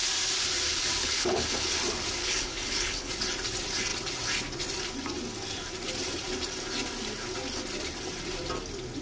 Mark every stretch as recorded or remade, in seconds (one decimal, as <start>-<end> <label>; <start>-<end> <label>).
0.0-1.0 recorded; 1.0-1.7 remade; 1.7-2.2 recorded; 2.2-3.1 remade; 3.1-9.0 recorded